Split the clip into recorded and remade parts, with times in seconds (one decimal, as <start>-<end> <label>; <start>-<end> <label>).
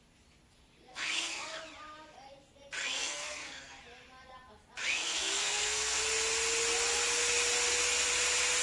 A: 0.0-0.9 recorded; 0.9-1.6 remade; 1.6-2.8 recorded; 2.8-3.8 remade; 3.8-4.9 recorded; 4.9-6.0 remade; 6.0-8.6 recorded